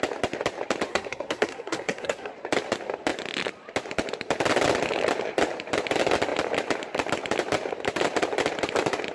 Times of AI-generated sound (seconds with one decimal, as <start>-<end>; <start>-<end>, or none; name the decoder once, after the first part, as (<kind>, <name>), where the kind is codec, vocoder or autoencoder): 0.9-2.3 (codec, SNAC)

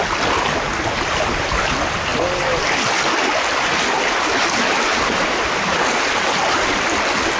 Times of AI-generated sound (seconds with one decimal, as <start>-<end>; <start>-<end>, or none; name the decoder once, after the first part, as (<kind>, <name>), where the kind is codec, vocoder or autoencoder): none

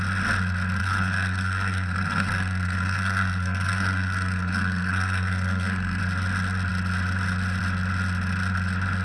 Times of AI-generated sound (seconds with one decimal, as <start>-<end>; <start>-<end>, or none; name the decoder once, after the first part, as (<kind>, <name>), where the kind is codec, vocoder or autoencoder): 0.8-6.0 (codec, SNAC)

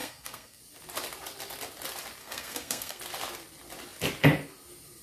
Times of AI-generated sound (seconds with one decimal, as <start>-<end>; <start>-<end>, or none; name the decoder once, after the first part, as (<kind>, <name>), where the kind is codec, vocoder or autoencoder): 0.0-0.6 (codec, SNAC); 2.2-3.0

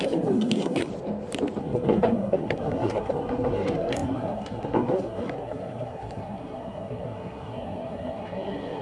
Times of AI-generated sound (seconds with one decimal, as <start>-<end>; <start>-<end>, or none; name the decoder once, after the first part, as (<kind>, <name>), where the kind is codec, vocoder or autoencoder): 0.0-0.9 (codec, SNAC); 1.6-8.8

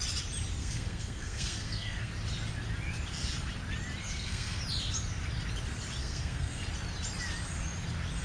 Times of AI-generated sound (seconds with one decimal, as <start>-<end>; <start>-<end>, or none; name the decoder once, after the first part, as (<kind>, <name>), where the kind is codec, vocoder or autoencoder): 0.6-2.1 (codec, SNAC); 4.0-4.6; 6.0-6.6

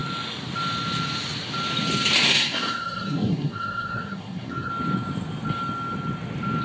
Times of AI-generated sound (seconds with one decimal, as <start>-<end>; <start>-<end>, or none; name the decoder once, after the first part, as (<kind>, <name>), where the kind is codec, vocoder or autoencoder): 2.2-4.7 (codec, SNAC)

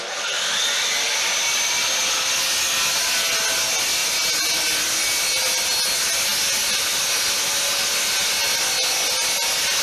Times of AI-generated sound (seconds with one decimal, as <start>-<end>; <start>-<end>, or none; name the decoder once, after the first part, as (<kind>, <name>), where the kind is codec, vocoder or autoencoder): none